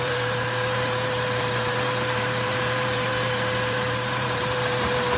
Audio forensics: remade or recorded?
remade